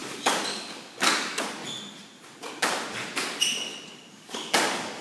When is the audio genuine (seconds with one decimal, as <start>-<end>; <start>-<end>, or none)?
1.6-4.1